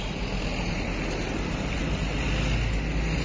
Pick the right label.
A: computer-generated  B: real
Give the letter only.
B